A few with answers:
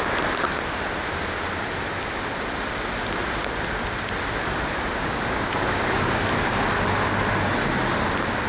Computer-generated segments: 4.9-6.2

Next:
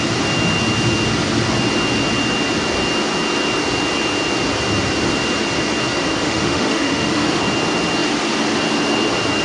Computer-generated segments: 6.2-7.4